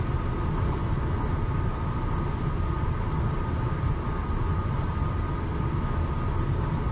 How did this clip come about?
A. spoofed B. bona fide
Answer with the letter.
B